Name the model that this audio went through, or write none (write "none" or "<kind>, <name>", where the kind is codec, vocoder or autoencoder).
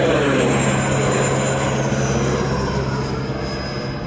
none